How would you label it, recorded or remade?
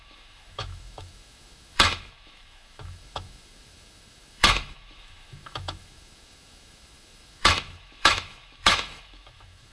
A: remade